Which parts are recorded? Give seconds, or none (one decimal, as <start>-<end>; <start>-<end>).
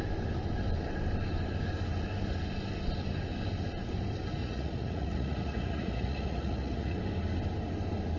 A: 0.0-4.4; 7.0-8.2